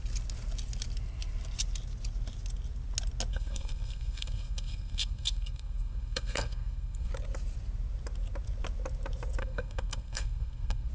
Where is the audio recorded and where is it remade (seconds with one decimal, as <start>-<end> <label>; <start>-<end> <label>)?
0.0-3.3 recorded; 3.3-7.1 remade; 7.1-9.4 recorded; 9.4-10.9 remade